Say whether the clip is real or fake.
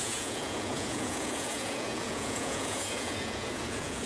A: fake